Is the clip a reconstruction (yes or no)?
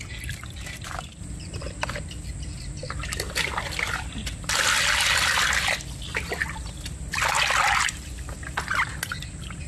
no